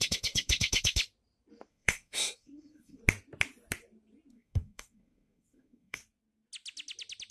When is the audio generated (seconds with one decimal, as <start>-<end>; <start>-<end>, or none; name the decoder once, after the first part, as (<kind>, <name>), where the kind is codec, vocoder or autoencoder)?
0.0-1.0 (codec, SNAC); 1.7-3.0; 4.3-6.0